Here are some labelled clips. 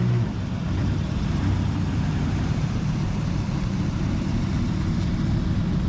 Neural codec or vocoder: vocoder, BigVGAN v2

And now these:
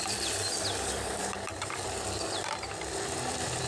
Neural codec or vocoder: vocoder, BigVGAN v2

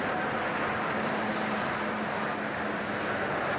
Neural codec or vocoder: none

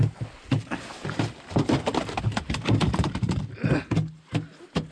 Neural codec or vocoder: none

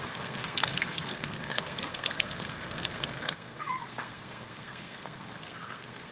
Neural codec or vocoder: codec, SNAC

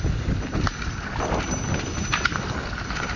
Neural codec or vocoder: none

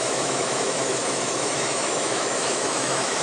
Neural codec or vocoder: autoencoder, DAC-VAE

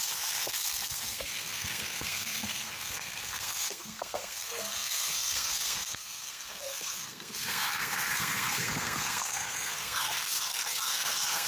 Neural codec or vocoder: codec, SNAC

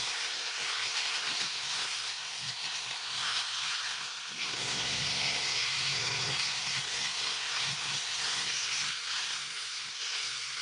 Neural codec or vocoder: codec, SNAC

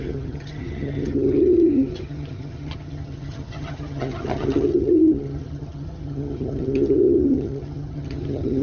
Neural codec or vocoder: vocoder, HiFi-GAN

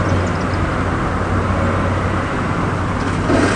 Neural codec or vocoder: none